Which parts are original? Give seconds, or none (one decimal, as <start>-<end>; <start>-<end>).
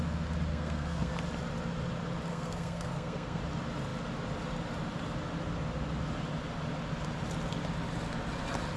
0.0-0.5; 1.1-2.3; 3.4-8.8